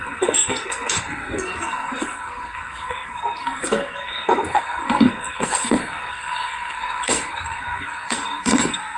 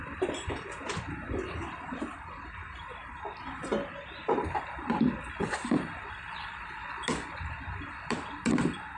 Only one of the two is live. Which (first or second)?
second